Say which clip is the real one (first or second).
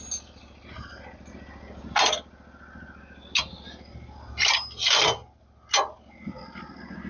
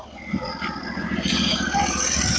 first